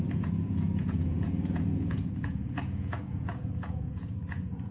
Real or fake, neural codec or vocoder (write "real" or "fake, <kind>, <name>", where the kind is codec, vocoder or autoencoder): fake, vocoder, Vocos